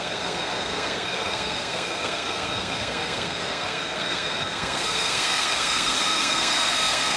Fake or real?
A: fake